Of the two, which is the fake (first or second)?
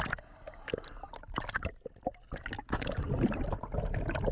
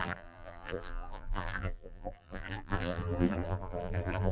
second